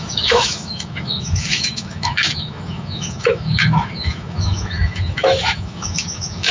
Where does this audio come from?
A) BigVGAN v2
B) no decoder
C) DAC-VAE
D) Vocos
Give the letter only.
C